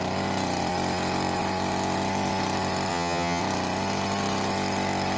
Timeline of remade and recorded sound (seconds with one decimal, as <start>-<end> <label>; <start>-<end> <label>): 0.0-2.9 recorded; 2.9-3.4 remade; 3.4-5.2 recorded